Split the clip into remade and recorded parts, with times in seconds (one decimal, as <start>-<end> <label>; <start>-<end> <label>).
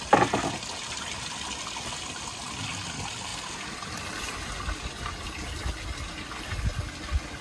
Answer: 0.0-7.4 recorded